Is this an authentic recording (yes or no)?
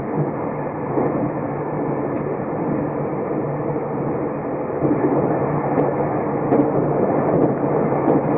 yes